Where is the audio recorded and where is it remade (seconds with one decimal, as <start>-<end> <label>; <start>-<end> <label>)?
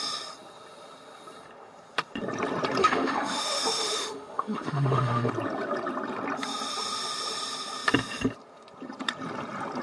0.0-2.8 recorded; 2.8-5.3 remade; 5.3-9.8 recorded